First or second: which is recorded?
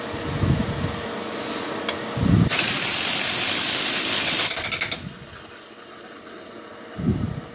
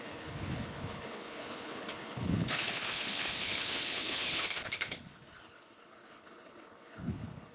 first